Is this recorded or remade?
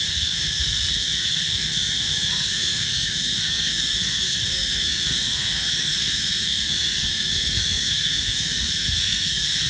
remade